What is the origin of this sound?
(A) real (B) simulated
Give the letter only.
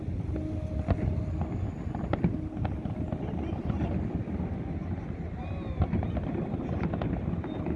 A